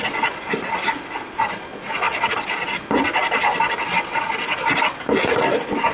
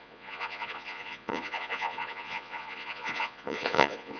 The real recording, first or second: first